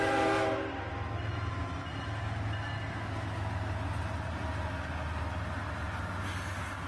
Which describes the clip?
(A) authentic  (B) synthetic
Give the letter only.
A